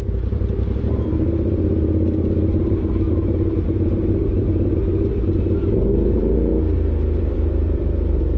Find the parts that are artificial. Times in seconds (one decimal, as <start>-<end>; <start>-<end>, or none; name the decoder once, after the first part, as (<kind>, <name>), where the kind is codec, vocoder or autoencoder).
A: 0.0-6.5 (vocoder, BigVGAN v2); 7.2-8.4